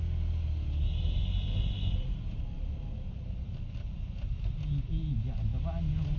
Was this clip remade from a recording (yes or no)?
no